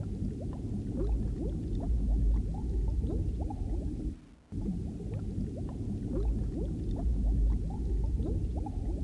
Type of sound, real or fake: real